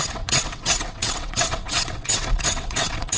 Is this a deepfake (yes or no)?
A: yes